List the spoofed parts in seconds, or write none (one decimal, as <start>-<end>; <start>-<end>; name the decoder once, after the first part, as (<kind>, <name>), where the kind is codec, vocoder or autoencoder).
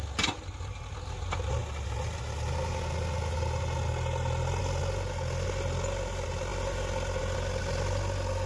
none